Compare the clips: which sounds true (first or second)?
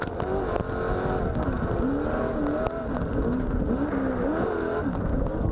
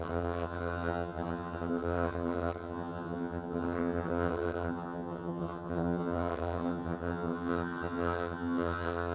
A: first